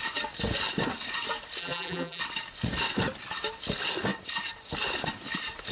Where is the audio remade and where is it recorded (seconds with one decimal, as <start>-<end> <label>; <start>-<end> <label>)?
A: 0.0-1.6 recorded; 1.6-2.2 remade; 2.2-5.7 recorded